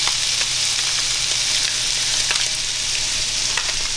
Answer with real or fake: real